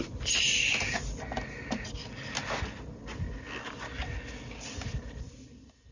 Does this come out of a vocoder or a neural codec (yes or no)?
no